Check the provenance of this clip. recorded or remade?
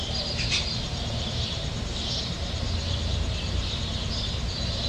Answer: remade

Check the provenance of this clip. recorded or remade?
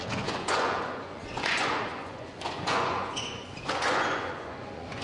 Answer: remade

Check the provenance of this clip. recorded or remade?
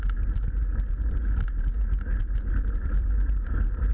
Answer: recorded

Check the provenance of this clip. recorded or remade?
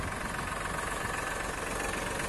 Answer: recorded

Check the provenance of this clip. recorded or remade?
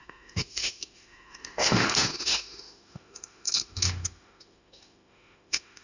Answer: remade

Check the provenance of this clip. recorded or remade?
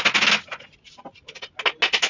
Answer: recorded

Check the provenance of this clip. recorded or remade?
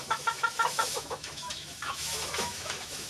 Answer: remade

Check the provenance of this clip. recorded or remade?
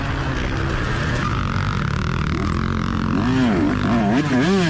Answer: recorded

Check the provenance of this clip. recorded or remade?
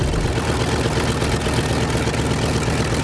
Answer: recorded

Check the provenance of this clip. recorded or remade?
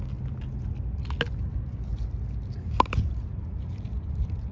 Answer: recorded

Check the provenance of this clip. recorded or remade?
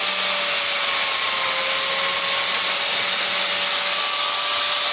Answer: recorded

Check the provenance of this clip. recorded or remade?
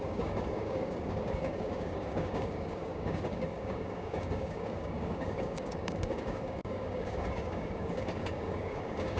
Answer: remade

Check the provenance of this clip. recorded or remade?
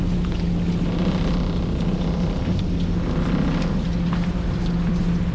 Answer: recorded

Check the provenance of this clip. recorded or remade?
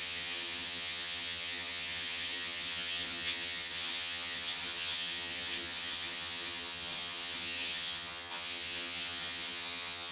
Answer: remade